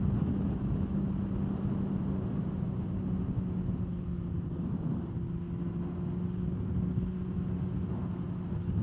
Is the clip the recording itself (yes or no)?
yes